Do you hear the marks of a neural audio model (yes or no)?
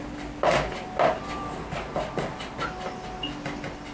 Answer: no